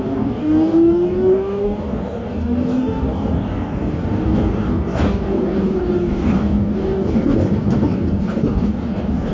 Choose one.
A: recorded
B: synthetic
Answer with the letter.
B